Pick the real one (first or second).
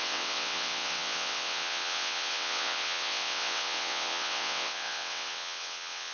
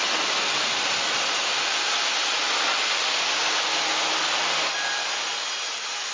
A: second